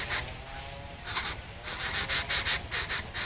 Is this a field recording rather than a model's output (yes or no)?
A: yes